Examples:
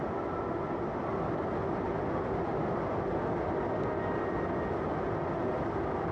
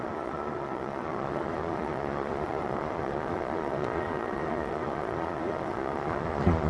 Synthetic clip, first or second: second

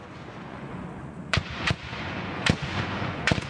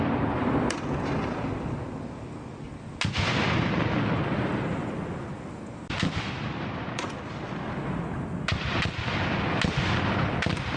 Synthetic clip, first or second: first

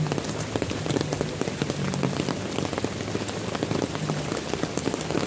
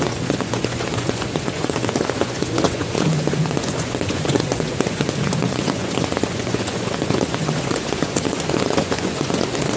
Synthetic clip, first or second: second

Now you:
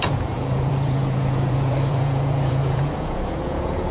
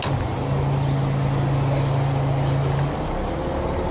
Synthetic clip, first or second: first